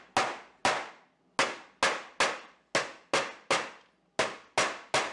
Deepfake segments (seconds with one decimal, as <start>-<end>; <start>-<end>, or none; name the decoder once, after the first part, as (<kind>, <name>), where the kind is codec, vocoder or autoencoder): none